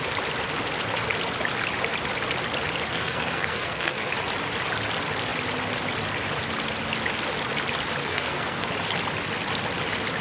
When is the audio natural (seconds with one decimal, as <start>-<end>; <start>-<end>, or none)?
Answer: 0.0-2.9; 4.1-8.0; 8.7-10.2